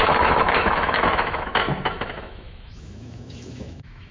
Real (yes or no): no